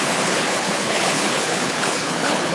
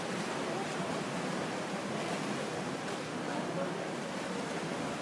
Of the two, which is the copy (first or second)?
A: first